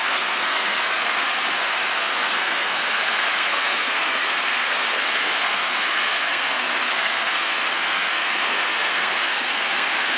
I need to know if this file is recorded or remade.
remade